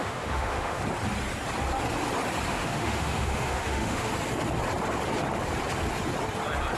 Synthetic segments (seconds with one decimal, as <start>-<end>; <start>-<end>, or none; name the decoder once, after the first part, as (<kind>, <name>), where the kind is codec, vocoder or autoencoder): 0.0-0.8 (autoencoder, DAC-VAE); 2.5-4.1